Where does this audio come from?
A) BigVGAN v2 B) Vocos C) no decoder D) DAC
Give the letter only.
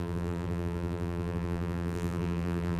A